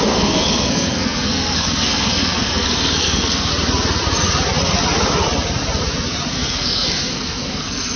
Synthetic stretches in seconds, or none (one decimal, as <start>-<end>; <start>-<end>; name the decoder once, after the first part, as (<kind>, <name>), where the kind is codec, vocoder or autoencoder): 0.0-3.5 (codec, SNAC); 6.3-8.0